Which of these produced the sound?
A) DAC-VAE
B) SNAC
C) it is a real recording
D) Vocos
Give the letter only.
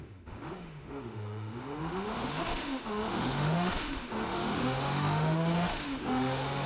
A